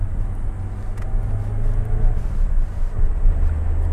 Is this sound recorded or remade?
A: recorded